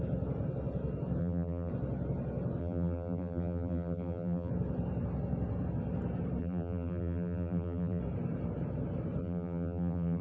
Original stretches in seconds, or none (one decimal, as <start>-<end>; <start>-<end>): 0.0-1.2; 1.7-2.6; 4.5-6.4; 8.0-9.2